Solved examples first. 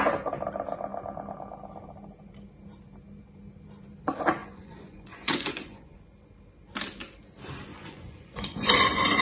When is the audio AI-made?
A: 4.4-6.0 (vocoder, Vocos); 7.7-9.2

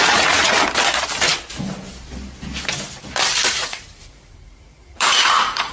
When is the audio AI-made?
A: 0.0-0.5 (vocoder, Vocos); 3.5-5.7

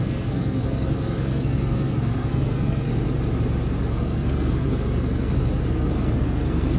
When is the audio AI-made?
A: 0.0-2.9 (codec, SNAC); 3.8-6.8

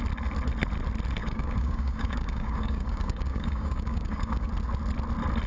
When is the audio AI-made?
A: 1.2-4.5 (codec, DAC)